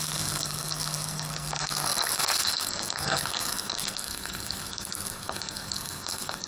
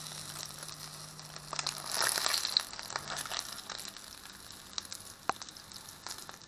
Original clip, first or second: second